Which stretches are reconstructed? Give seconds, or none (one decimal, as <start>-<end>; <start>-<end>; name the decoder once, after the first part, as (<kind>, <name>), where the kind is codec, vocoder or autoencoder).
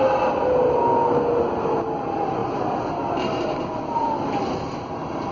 none